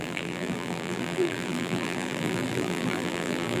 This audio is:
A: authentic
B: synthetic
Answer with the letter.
B